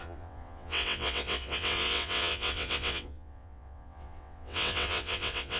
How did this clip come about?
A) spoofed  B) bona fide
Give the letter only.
A